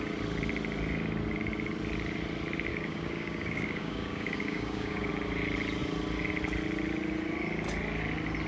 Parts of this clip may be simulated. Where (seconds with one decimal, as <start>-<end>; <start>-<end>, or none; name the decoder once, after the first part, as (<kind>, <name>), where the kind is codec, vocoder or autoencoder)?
2.7-5.1 (codec, DAC)